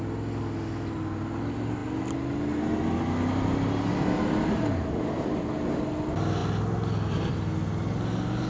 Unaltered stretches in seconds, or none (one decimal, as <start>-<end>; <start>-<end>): 0.0-8.5